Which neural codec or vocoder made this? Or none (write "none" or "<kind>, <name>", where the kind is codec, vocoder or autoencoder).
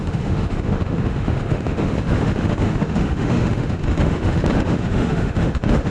autoencoder, DAC-VAE